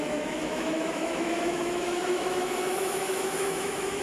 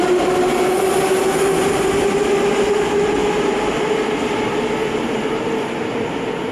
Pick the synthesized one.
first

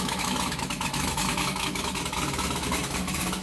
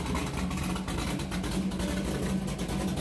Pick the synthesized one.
first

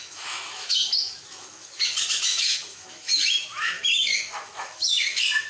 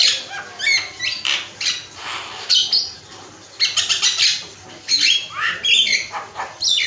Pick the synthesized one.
first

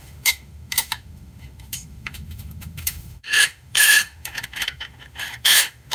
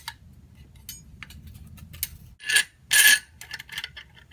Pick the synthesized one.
first